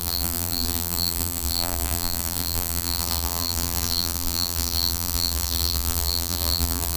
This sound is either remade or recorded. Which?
remade